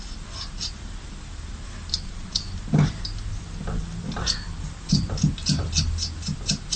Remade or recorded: recorded